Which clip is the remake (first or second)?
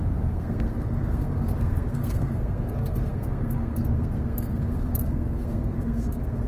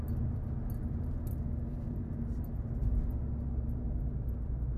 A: first